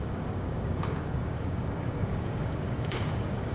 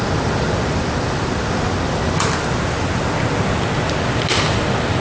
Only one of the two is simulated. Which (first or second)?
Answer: first